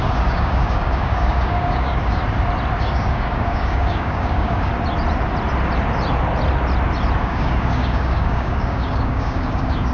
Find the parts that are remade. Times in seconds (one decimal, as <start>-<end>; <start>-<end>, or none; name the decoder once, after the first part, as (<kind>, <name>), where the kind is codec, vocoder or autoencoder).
0.0-2.2 (codec, DAC); 2.8-4.7; 7.2-9.9